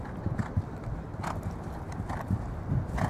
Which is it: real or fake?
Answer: real